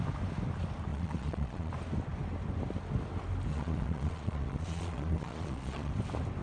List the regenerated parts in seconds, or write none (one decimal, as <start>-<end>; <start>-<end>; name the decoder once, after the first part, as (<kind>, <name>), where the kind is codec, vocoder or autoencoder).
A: 0.9-1.7 (vocoder, Vocos); 3.5-5.9